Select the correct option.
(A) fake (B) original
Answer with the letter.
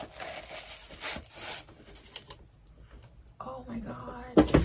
B